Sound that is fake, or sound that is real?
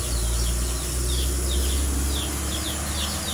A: real